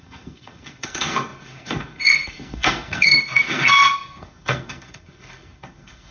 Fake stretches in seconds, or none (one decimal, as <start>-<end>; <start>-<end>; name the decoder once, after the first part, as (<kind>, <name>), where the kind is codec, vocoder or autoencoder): 0.0-6.1 (codec, SNAC)